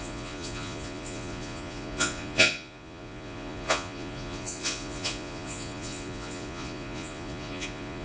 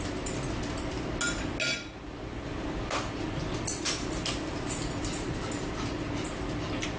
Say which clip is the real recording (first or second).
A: second